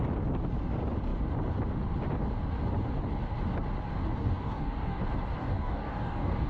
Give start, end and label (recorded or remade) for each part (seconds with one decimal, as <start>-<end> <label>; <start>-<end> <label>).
0.0-4.2 recorded; 4.2-5.0 remade; 5.0-5.4 recorded; 5.4-6.5 remade